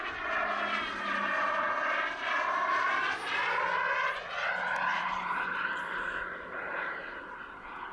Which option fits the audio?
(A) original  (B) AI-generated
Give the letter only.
A